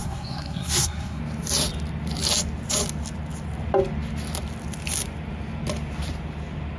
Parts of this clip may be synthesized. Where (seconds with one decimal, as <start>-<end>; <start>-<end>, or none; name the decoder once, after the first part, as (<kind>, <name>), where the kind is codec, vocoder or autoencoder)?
0.0-1.2 (codec, SNAC)